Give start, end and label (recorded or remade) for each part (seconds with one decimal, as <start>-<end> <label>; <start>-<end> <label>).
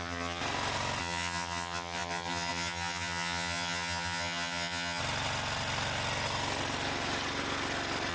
0.0-0.4 remade; 0.4-1.0 recorded; 1.0-5.0 remade; 5.0-8.1 recorded